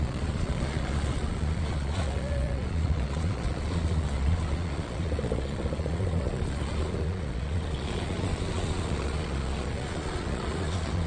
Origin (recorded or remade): remade